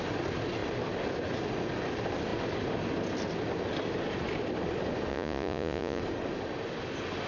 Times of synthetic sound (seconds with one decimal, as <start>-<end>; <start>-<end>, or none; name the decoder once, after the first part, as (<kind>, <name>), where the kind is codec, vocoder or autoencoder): 5.1-6.0 (vocoder, Vocos)